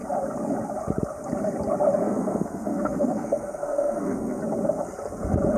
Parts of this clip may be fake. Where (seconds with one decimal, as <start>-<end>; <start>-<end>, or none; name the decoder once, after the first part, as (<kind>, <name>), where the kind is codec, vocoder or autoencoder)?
2.0-4.4 (codec, SNAC)